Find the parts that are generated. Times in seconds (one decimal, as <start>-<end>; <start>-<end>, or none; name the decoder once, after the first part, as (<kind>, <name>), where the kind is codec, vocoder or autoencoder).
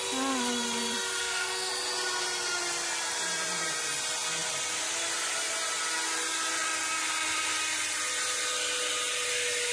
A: 1.2-1.7 (codec, SNAC)